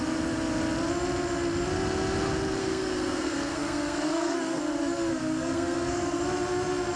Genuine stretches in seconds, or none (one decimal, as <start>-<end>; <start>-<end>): 0.0-2.6; 4.6-5.1; 6.2-7.0